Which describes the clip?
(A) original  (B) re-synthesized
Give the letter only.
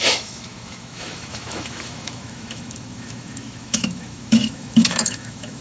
B